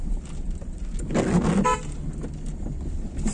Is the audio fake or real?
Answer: real